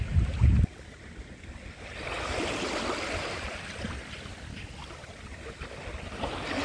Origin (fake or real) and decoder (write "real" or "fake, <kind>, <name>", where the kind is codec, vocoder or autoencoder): real